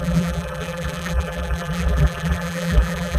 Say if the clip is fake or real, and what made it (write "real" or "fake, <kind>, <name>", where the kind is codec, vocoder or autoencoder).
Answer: fake, vocoder, BigVGAN v2